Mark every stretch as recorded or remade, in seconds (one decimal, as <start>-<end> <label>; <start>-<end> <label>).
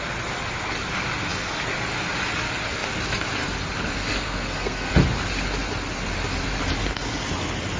0.0-4.1 recorded; 4.1-4.9 remade; 4.9-7.8 recorded